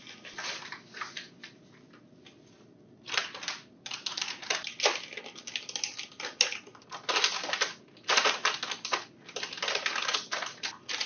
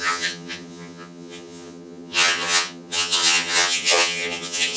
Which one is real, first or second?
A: first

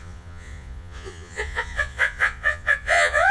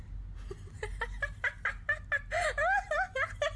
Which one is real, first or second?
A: second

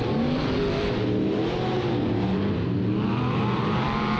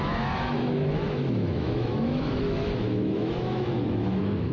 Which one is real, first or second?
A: first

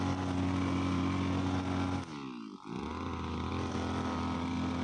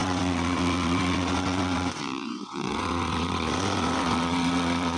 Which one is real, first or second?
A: first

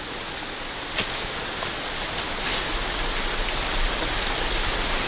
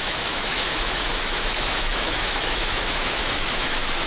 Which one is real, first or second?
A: first